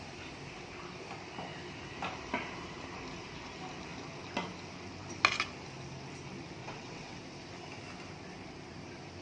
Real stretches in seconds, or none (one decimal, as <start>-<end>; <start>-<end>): 0.0-6.6; 7.2-9.2